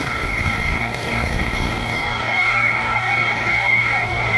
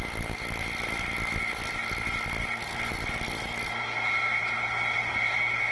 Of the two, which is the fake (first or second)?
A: first